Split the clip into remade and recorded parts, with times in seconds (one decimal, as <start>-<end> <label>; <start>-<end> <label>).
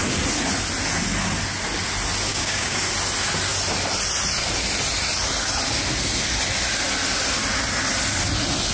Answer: 0.0-2.3 recorded; 2.3-2.8 remade; 2.8-8.7 recorded